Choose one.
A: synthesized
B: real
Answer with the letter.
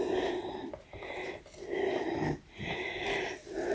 B